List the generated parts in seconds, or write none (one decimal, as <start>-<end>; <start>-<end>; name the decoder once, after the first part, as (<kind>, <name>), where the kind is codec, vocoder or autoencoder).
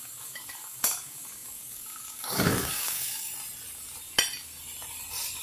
0.0-3.3 (codec, DAC)